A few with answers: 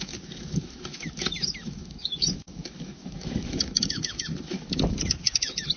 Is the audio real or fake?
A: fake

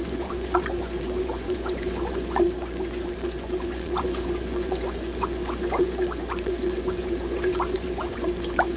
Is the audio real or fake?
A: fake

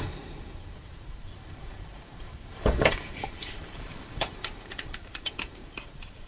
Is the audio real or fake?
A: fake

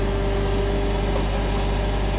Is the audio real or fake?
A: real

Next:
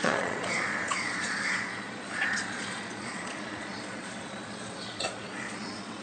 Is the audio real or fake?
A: fake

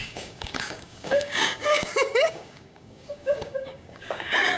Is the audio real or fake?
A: fake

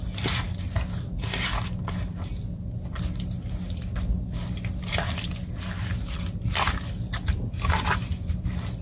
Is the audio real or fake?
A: real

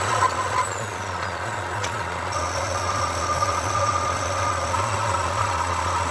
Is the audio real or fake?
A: fake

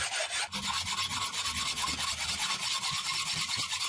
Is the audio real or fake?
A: real